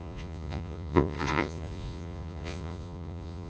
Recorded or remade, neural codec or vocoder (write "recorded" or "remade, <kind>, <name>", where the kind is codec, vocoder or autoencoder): remade, vocoder, Vocos